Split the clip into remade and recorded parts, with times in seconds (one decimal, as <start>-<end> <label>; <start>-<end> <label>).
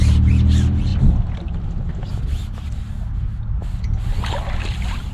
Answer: 0.0-5.1 recorded